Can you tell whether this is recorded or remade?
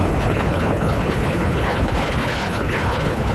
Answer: remade